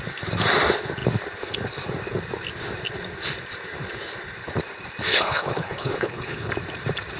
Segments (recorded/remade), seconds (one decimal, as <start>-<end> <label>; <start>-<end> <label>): 0.0-5.1 recorded; 5.1-6.5 remade; 6.5-7.2 recorded